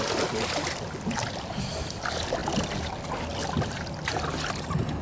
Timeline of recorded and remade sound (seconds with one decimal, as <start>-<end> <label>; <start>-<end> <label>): 0.0-5.0 recorded

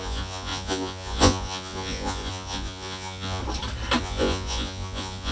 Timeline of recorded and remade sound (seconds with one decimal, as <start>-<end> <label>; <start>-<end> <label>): 0.0-3.4 remade; 3.4-4.0 recorded; 4.0-5.3 remade

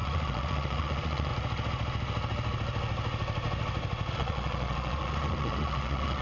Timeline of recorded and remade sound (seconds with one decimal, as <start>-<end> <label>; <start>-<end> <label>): 0.0-1.3 remade; 1.3-4.1 recorded; 4.1-6.2 remade

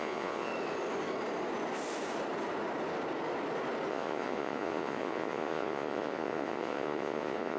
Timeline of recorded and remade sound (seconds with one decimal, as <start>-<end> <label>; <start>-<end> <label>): 0.0-0.5 remade; 0.5-3.9 recorded; 3.9-7.6 remade

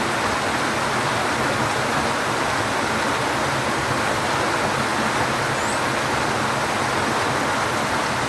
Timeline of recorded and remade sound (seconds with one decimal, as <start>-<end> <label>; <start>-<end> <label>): 0.0-8.3 recorded

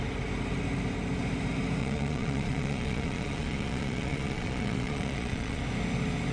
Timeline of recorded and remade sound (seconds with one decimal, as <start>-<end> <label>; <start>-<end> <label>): 0.0-1.8 recorded; 1.8-5.6 remade; 5.6-6.3 recorded

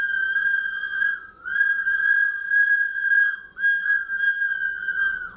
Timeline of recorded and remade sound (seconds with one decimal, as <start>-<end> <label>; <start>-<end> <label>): 0.0-0.4 recorded; 0.4-3.6 remade; 3.6-5.4 recorded